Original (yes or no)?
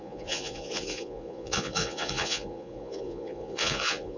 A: no